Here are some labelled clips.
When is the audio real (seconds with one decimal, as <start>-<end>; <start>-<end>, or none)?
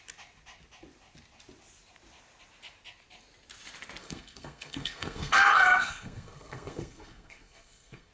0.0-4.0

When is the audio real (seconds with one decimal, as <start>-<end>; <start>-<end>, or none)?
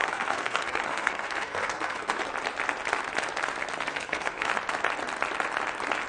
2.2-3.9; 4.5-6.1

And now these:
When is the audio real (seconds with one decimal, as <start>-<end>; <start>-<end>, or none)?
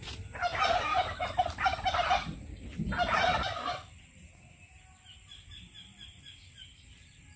0.0-7.4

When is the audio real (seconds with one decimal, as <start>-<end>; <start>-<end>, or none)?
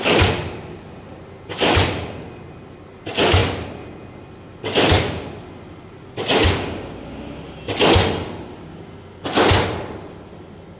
0.0-10.8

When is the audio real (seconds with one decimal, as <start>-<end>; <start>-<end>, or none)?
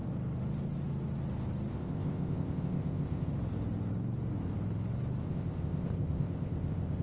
0.0-1.7; 3.3-5.2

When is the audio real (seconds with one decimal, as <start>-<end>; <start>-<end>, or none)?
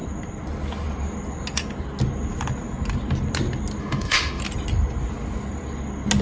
0.0-3.8; 4.4-6.2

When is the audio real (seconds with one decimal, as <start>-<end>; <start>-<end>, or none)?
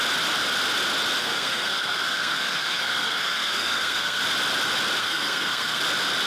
0.0-1.2; 4.2-5.0; 5.8-6.3